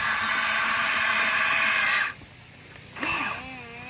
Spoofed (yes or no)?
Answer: no